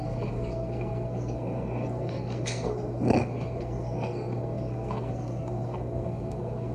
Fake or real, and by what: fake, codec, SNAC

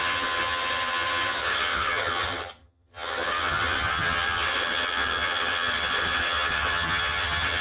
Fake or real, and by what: fake, vocoder, HiFi-GAN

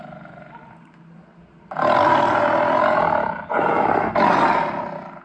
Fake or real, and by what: real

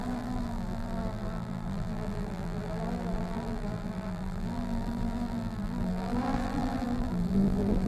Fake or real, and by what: fake, vocoder, BigVGAN v2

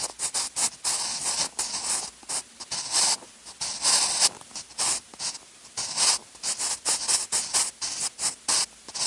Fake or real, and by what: real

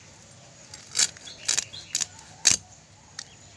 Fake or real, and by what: real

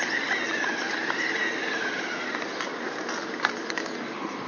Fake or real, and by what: real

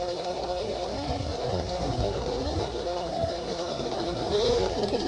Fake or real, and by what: fake, codec, SNAC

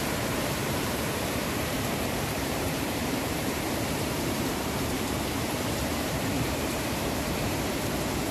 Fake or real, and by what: fake, vocoder, BigVGAN v2